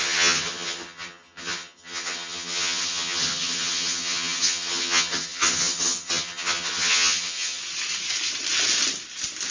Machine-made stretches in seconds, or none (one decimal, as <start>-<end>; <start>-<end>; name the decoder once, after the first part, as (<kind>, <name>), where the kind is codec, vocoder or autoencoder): 0.0-7.6 (vocoder, HiFi-GAN)